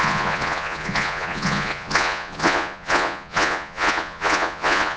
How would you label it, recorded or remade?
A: remade